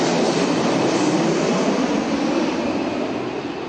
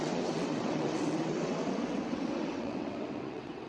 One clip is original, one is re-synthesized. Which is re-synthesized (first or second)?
second